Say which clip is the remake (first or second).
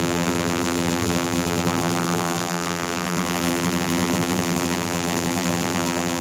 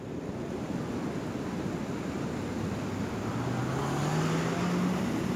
first